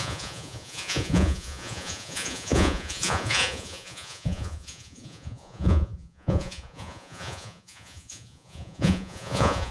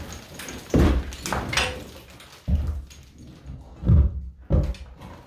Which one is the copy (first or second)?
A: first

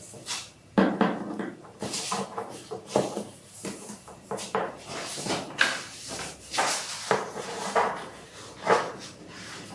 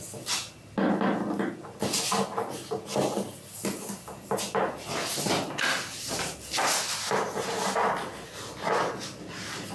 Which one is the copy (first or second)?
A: first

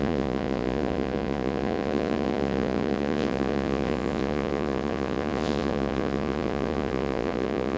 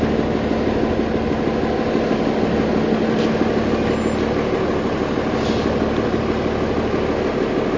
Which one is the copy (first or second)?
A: first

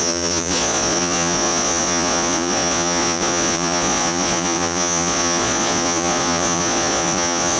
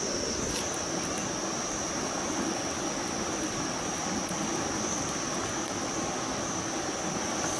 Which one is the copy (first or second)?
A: first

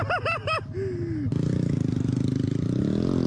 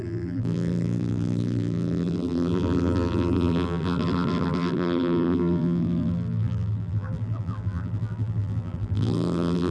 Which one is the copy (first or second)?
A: second